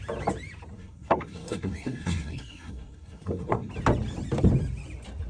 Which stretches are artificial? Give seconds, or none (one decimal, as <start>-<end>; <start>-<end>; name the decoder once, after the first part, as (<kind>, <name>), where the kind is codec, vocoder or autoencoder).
0.7-3.7 (codec, SNAC)